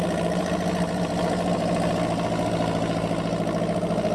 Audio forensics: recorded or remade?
recorded